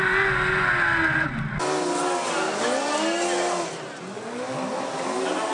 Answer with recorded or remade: recorded